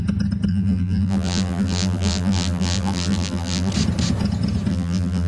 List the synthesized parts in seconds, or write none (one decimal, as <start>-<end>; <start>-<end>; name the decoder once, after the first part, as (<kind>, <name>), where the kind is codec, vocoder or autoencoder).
0.5-3.7 (vocoder, BigVGAN v2); 4.7-5.3